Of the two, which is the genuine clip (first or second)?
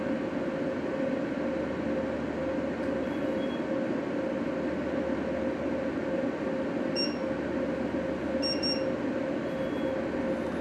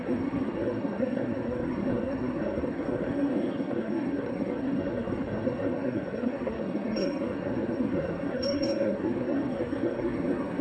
first